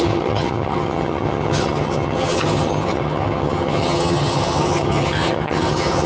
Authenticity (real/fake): fake